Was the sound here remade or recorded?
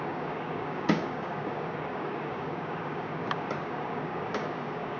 remade